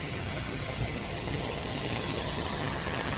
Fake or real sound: fake